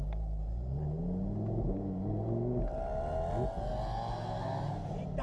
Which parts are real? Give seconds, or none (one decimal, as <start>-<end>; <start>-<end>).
0.0-5.2